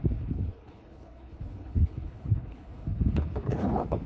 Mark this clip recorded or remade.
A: remade